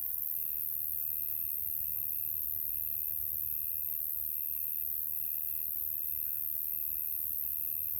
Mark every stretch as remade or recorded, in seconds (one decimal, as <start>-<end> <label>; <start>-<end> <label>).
0.0-8.0 recorded